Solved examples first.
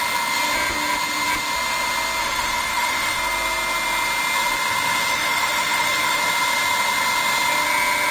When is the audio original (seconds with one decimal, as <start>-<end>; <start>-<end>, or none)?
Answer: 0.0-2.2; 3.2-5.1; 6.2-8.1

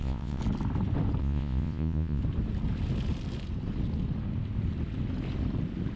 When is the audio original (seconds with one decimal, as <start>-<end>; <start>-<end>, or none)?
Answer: 0.4-1.2; 2.2-6.0

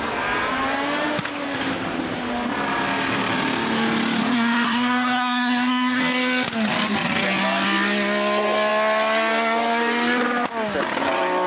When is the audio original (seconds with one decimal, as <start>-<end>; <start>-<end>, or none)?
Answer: 0.0-4.2; 6.0-11.5